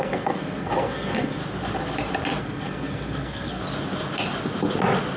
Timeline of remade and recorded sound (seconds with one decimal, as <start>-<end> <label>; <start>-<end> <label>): 0.0-1.4 remade; 1.4-2.4 recorded; 2.4-3.6 remade; 3.6-5.2 recorded